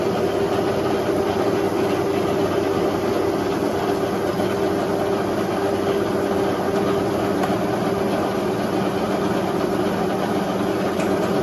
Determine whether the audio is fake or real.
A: real